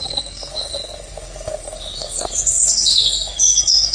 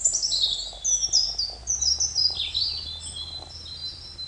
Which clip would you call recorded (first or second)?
second